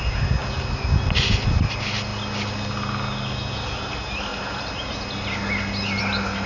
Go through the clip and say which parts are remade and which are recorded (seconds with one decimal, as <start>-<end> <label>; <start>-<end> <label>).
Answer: 0.0-6.5 recorded